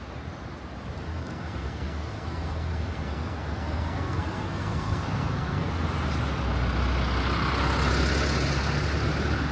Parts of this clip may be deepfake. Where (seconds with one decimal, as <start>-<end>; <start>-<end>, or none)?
1.1-5.7